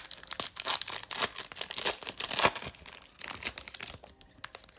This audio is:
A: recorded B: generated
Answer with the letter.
A